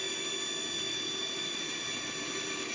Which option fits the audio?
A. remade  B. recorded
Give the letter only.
B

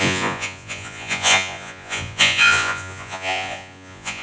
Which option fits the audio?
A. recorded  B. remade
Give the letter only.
B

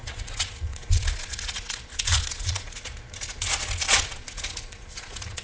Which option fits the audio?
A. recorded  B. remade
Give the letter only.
B